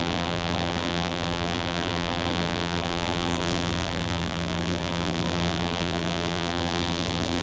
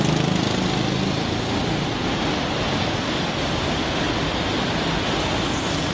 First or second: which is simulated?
first